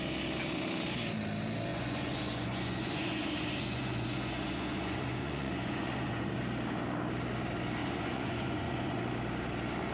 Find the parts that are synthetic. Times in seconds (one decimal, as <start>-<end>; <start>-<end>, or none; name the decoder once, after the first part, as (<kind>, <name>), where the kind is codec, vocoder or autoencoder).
1.7-6.4 (vocoder, Vocos); 7.8-9.0

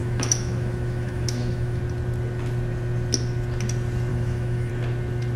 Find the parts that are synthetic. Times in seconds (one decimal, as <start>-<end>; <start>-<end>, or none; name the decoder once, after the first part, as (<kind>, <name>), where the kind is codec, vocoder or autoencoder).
0.0-1.8 (autoencoder, DAC-VAE); 4.1-4.7

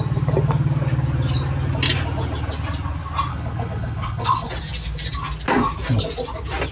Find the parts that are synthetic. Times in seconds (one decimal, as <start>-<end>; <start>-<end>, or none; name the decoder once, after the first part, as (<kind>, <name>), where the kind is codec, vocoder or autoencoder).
3.3-4.5 (codec, HILCodec)

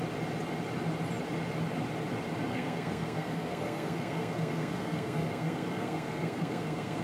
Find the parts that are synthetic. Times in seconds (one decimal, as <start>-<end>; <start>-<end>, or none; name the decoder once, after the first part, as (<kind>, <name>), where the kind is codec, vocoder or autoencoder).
2.5-7.0 (codec, SNAC)